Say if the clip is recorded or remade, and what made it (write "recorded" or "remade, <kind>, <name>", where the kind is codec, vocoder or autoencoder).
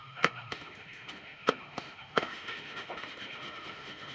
remade, autoencoder, DAC-VAE